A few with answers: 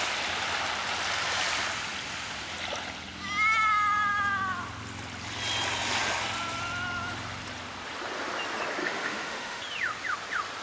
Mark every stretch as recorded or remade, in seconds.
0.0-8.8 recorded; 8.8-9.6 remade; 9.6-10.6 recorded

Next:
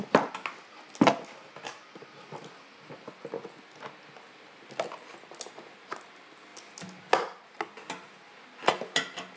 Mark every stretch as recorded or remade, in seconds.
0.0-9.4 recorded